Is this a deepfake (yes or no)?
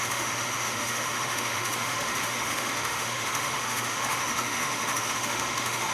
yes